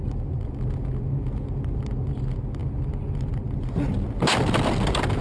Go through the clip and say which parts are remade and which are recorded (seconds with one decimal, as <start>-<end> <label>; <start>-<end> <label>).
0.0-5.2 recorded